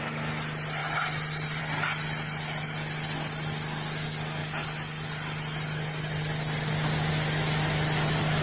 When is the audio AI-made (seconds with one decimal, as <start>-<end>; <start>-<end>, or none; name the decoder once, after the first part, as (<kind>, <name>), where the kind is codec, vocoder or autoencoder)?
none